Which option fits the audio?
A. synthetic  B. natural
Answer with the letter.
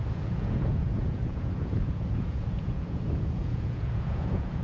A